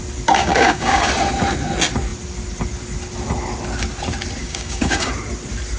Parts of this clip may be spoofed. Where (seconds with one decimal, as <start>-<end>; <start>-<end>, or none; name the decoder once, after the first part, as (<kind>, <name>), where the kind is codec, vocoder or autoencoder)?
0.4-1.1 (codec, DAC); 4.4-5.1